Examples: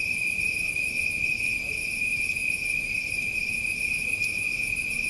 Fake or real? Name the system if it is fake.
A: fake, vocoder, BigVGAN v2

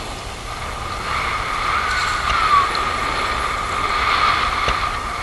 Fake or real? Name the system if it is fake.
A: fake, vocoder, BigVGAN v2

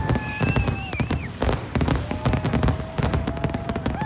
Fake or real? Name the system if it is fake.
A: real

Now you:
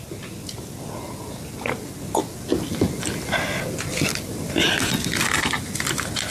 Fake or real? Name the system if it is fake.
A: real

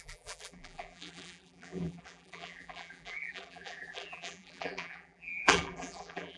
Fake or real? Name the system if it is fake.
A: fake, vocoder, BigVGAN v2